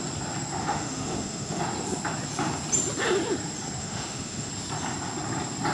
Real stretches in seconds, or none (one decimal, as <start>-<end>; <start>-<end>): 0.0-0.6; 1.6-3.8; 4.5-5.7